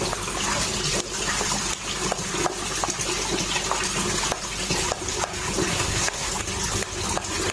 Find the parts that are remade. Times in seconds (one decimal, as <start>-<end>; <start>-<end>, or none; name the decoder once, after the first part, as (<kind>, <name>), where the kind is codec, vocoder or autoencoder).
5.7-6.3 (codec, SNAC)

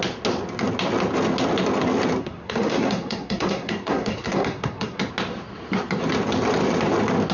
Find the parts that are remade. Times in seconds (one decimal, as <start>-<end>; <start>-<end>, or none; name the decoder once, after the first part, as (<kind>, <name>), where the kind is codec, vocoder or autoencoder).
2.2-5.0 (codec, SNAC)

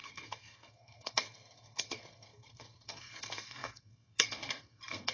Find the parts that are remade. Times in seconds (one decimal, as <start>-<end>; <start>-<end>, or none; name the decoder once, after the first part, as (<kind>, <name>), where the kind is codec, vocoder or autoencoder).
0.0-5.1 (codec, SNAC)

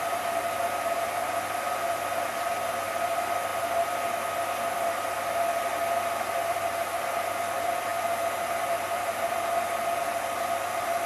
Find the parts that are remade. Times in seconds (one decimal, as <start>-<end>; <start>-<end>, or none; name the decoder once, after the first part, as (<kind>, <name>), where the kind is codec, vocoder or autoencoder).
none

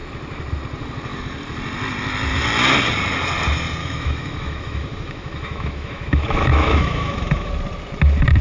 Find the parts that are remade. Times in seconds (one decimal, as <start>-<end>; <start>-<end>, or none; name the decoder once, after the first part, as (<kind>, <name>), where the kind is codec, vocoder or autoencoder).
3.8-7.5 (autoencoder, DAC-VAE)